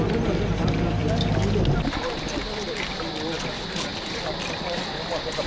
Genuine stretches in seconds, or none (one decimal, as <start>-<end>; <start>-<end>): 0.0-5.5